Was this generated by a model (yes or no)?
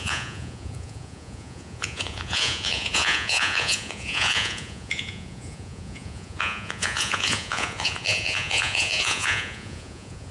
yes